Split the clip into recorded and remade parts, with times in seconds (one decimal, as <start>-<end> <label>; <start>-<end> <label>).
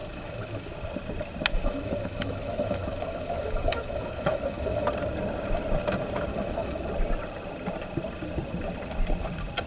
0.0-0.7 remade; 0.7-1.5 recorded; 1.5-4.9 remade; 4.9-6.3 recorded; 6.3-6.9 remade; 6.9-9.7 recorded